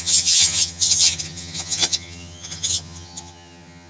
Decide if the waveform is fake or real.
fake